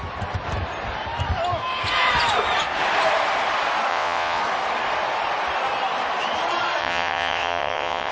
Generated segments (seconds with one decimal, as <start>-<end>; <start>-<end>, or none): 3.9-4.4; 6.8-8.1